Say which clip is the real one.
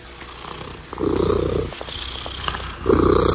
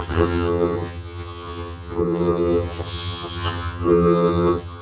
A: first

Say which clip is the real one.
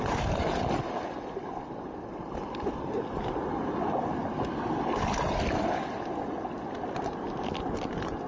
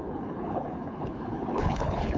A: first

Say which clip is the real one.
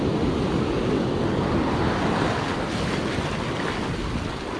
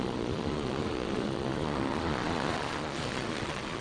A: first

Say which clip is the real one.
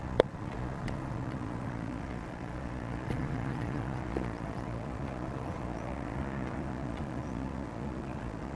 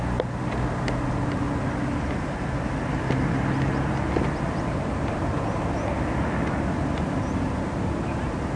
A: second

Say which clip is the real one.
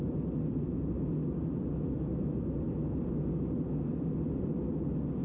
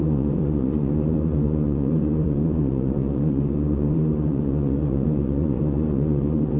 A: first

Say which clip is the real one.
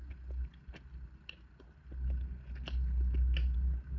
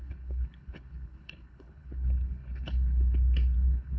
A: first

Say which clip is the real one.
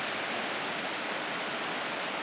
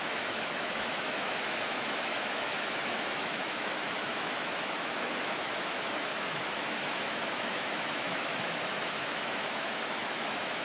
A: first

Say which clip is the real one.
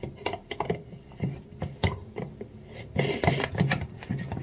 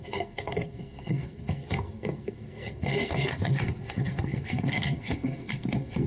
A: first